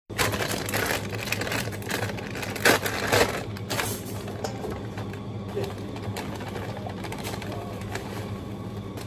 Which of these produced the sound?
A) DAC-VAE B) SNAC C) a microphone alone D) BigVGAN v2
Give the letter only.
C